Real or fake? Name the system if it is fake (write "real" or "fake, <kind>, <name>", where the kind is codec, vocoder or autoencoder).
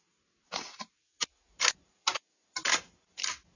real